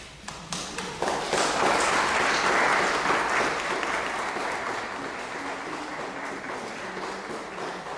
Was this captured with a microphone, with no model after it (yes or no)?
yes